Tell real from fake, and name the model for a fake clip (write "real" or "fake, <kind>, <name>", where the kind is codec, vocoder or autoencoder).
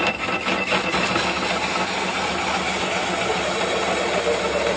real